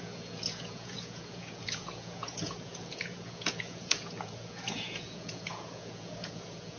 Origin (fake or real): fake